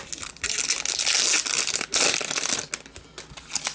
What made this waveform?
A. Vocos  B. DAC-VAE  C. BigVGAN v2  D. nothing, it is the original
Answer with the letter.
D